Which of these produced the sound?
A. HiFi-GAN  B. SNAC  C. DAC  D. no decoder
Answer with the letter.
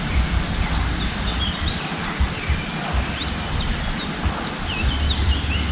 D